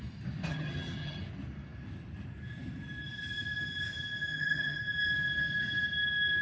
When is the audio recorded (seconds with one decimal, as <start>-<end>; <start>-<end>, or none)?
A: 0.0-0.5; 1.2-4.3; 4.8-6.4